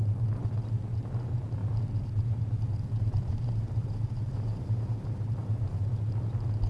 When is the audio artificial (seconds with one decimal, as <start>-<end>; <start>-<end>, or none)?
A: 1.6-4.9